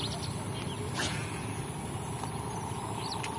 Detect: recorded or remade recorded